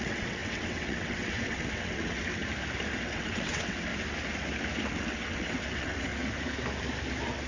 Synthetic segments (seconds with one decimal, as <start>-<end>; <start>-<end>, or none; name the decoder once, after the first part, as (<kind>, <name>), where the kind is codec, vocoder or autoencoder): 0.0-2.4 (vocoder, WaveNeXt); 3.0-3.9; 4.9-6.1